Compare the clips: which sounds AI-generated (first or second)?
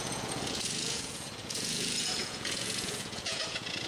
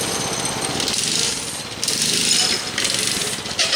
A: first